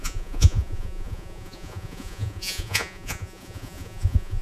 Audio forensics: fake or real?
fake